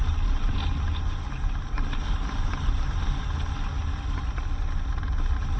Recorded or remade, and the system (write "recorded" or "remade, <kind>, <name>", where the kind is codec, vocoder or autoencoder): recorded